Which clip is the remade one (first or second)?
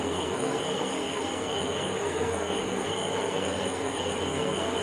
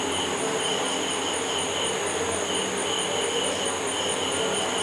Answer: first